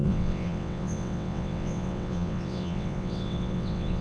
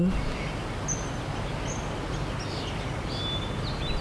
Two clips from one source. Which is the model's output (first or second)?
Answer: first